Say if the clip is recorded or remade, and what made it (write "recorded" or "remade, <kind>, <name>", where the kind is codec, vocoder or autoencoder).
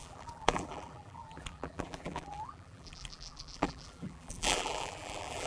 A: remade, vocoder, BigVGAN v2